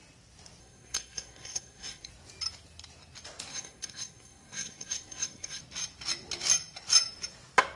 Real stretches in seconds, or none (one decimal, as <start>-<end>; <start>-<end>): 0.0-0.6; 2.1-3.5; 5.6-7.8